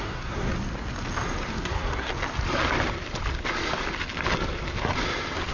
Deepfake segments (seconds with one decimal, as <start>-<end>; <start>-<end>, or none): 0.0-0.5; 1.5-2.1